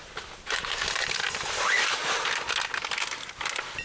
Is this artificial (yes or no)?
no